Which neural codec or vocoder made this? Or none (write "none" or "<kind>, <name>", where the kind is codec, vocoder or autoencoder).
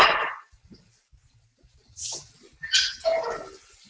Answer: none